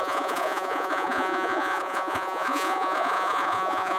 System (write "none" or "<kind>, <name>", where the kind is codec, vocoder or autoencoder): vocoder, Vocos